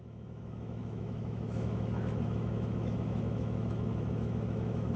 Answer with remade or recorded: remade